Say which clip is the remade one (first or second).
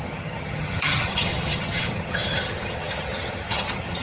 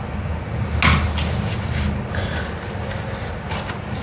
first